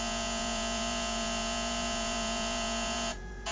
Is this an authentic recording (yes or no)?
no